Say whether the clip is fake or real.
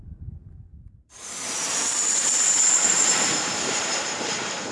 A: fake